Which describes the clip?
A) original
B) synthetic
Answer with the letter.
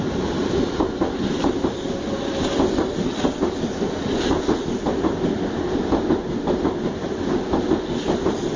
A